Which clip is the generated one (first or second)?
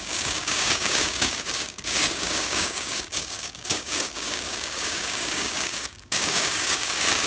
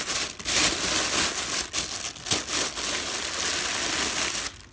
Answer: first